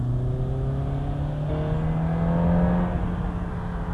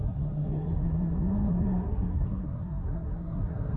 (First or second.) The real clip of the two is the first